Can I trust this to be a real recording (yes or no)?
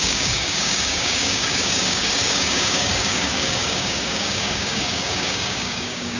no